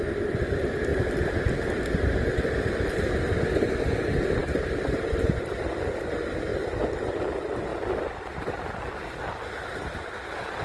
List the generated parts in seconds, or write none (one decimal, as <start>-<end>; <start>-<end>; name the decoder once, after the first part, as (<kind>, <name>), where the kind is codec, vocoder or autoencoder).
4.4-5.0 (vocoder, BigVGAN v2); 6.5-7.1; 7.7-8.7